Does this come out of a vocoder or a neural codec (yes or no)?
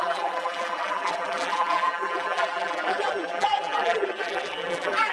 yes